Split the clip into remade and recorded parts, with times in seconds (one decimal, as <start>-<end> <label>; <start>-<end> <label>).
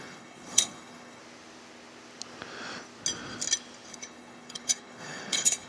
0.0-1.2 remade; 1.2-3.9 recorded; 3.9-5.7 remade